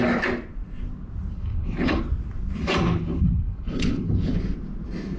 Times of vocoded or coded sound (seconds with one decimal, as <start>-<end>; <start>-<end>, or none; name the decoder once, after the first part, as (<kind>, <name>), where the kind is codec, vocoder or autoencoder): 1.3-2.0 (codec, HILCodec); 3.0-4.4